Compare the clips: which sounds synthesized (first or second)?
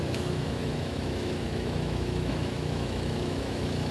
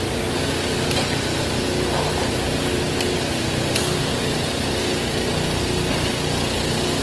first